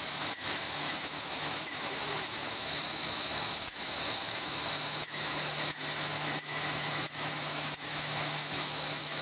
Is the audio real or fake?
fake